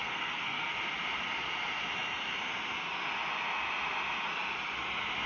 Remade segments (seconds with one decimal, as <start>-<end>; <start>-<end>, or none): 0.0-0.7